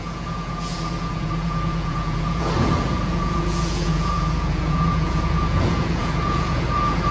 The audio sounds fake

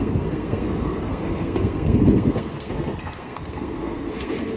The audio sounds fake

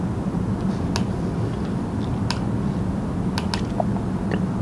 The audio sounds real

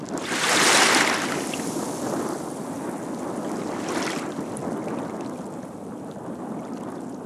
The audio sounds real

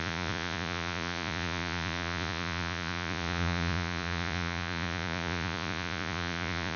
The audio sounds fake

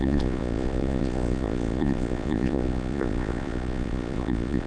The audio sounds fake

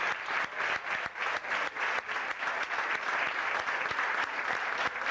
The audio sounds real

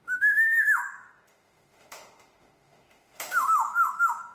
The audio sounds fake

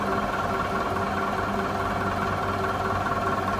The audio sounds real